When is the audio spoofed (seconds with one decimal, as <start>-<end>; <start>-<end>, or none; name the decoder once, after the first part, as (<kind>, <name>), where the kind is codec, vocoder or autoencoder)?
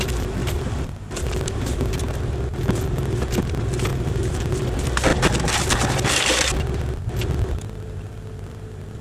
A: 0.4-2.2 (vocoder, BigVGAN v2); 3.9-4.5